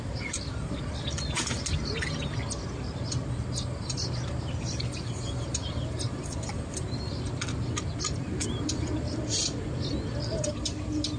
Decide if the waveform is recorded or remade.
recorded